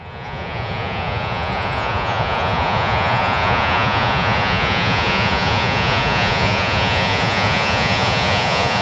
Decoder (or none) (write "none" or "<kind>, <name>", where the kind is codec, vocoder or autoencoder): vocoder, Vocos